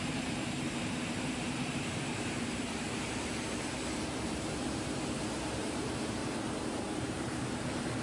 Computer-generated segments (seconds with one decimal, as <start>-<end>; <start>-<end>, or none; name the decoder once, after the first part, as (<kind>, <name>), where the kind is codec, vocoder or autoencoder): 0.0-6.2 (vocoder, BigVGAN v2); 6.9-8.0